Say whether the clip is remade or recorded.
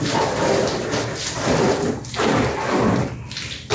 remade